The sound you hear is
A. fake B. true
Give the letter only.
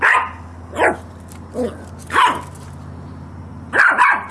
B